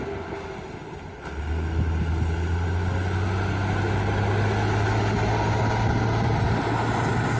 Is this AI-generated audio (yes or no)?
no